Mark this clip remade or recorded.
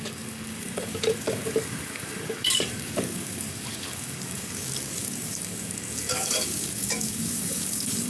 remade